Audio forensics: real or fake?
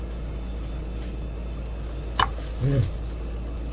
real